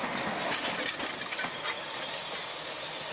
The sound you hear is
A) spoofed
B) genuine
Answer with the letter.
B